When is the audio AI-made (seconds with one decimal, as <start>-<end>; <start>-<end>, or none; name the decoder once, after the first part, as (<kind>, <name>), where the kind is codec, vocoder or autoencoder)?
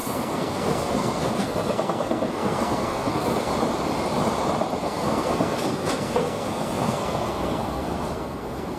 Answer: 0.0-3.5 (codec, SNAC); 4.8-8.8